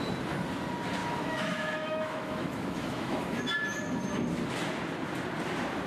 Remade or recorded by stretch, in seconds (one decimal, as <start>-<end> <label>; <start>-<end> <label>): 0.0-1.0 recorded; 1.0-3.4 remade; 3.4-5.9 recorded